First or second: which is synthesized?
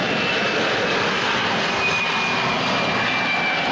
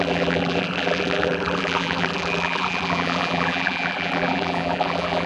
second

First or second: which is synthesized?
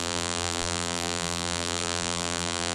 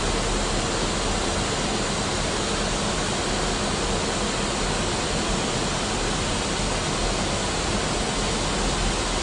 first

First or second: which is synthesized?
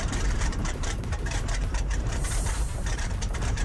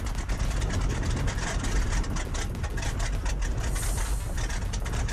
first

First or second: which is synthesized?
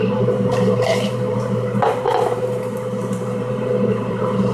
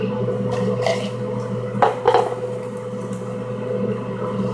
first